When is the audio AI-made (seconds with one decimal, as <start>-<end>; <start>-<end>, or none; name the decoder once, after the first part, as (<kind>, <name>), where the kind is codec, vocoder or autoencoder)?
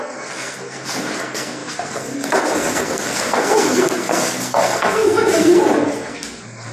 0.0-6.7 (codec, SNAC)